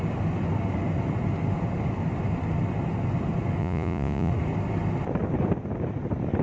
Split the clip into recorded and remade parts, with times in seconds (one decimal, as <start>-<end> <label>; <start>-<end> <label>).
0.0-3.6 recorded; 3.6-4.3 remade; 4.3-6.4 recorded